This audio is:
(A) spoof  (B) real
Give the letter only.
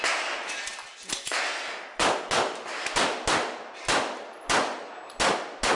B